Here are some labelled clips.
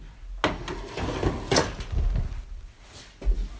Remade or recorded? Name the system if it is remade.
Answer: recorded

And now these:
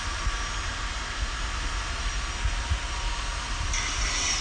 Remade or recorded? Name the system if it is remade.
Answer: recorded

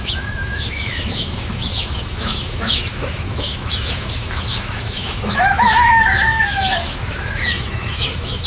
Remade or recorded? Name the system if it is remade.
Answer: remade, autoencoder, DAC-VAE